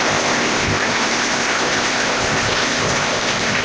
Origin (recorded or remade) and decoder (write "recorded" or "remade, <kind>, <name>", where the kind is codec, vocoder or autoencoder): remade, codec, ZipCodec